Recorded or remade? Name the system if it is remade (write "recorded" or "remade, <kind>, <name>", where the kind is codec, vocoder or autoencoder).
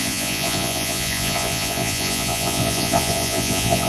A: remade, vocoder, Vocos